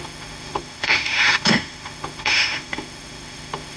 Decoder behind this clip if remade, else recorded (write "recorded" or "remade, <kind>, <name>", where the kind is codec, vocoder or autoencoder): remade, autoencoder, DAC-VAE